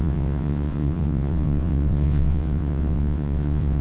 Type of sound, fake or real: fake